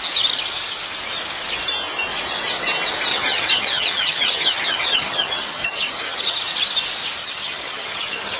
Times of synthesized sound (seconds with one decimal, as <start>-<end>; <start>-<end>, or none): 3.1-6.4; 7.2-8.4